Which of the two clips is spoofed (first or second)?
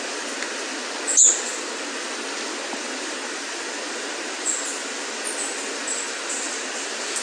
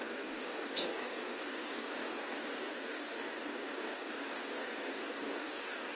second